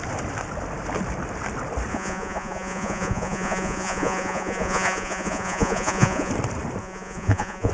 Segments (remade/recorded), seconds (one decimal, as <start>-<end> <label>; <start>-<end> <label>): 0.0-1.9 recorded; 1.9-6.3 remade; 6.3-6.8 recorded; 6.8-7.7 remade